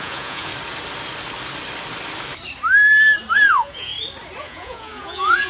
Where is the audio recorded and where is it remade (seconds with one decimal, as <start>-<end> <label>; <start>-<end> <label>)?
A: 0.0-0.5 remade; 0.5-3.5 recorded; 3.5-3.9 remade; 3.9-4.4 recorded; 4.4-5.5 remade